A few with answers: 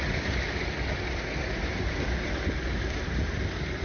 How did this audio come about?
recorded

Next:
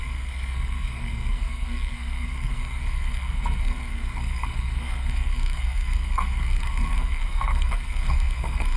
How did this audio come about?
remade